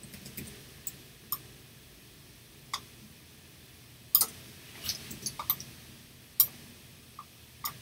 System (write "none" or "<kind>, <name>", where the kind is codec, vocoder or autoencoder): none